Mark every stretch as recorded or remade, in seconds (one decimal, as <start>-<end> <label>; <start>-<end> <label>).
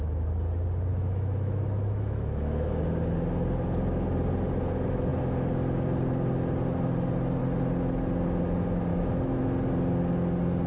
0.0-0.9 recorded; 0.9-2.8 remade; 2.8-8.9 recorded; 8.9-9.4 remade; 9.4-10.7 recorded